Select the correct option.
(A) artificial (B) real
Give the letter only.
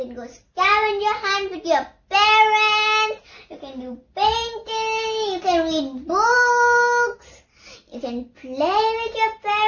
B